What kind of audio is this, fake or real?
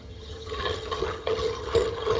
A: fake